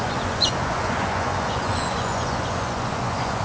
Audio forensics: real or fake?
fake